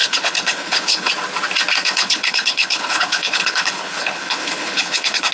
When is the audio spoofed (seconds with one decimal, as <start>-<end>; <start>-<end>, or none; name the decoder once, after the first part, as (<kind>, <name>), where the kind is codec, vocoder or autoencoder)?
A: 0.0-1.1 (codec, HILCodec); 1.8-5.3